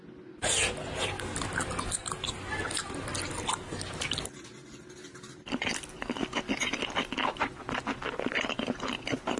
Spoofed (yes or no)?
no